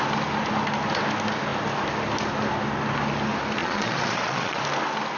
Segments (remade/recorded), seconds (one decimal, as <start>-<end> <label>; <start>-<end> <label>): 0.0-3.6 recorded; 3.6-4.6 remade; 4.6-5.2 recorded